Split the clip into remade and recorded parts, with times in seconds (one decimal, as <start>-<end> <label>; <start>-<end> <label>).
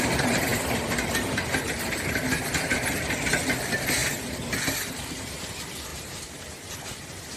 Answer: 0.0-5.9 recorded; 5.9-6.7 remade; 6.7-7.4 recorded